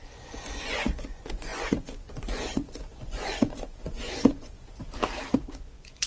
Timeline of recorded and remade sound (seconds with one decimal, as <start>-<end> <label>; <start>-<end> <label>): 0.0-4.8 remade; 4.8-5.4 recorded; 5.4-6.1 remade

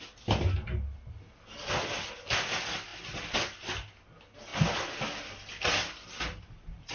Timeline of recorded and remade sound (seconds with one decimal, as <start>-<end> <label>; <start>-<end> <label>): 0.0-6.9 recorded

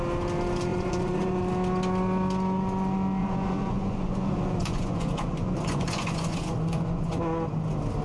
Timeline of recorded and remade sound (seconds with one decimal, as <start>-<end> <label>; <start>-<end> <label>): 0.0-0.7 recorded; 0.7-1.4 remade; 1.4-3.2 recorded; 3.2-7.2 remade; 7.2-8.0 recorded